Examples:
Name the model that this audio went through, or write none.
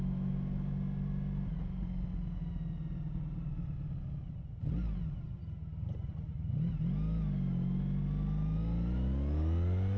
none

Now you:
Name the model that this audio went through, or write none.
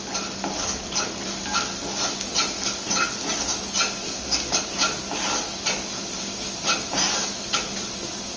none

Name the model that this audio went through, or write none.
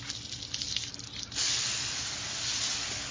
none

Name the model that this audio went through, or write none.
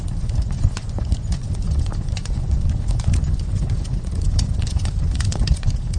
vocoder, Vocos